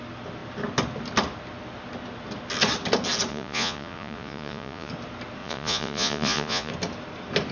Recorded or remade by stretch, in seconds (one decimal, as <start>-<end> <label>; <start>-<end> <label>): 0.0-3.3 recorded; 3.3-4.9 remade; 4.9-5.4 recorded; 5.4-6.7 remade; 6.7-7.5 recorded